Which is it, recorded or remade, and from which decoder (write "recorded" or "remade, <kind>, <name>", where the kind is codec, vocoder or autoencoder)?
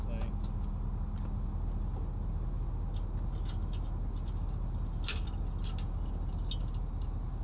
recorded